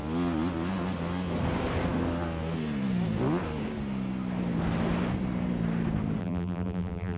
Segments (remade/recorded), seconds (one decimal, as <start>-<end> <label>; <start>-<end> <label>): 0.0-6.2 recorded; 6.2-7.2 remade